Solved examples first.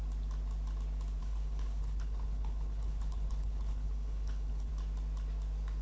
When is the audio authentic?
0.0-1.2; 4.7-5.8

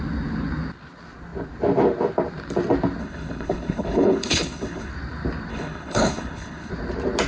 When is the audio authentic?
0.0-3.0; 4.9-5.5; 6.7-7.3

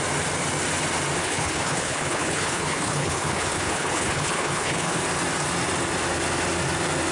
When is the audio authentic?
0.0-1.2; 5.0-7.1

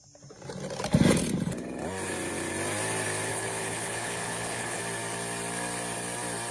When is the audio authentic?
0.0-3.3; 4.8-6.5

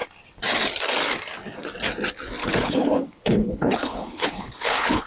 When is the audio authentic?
0.0-2.4

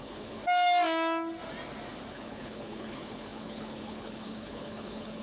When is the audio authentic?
0.4-2.1

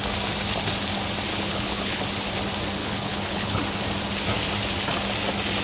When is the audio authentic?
0.0-1.3; 2.0-2.8; 3.6-5.6

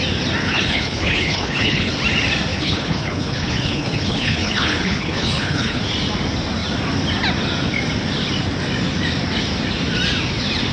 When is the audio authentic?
0.0-0.4; 1.9-2.5; 5.8-10.7